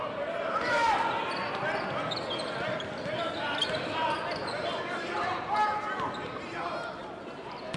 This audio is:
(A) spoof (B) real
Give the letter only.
B